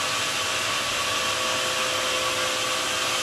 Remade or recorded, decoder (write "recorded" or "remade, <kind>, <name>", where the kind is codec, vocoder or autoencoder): recorded